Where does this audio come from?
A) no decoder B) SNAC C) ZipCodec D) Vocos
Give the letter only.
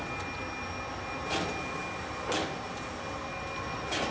A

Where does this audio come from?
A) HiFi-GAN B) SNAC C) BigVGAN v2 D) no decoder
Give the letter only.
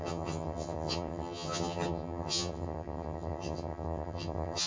A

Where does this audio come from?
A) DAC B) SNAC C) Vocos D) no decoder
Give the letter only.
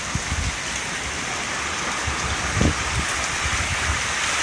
D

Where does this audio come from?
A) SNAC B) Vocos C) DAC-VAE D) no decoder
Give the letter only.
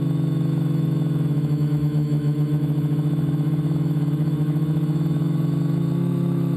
C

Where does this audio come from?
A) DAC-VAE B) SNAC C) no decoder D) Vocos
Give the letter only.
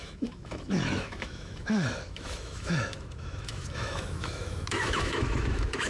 A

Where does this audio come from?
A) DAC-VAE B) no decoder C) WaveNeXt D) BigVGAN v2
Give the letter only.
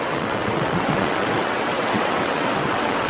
C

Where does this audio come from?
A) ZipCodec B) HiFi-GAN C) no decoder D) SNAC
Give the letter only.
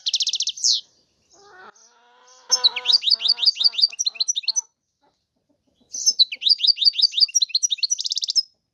C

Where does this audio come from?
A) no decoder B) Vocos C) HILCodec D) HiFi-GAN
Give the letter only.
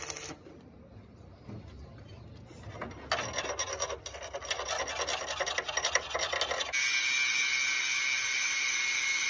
A